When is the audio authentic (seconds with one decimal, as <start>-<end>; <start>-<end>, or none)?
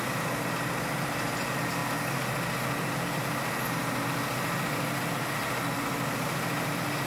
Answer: 0.0-7.1